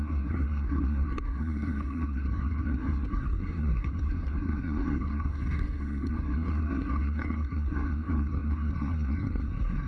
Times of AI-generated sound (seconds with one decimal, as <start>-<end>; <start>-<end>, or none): 0.0-9.9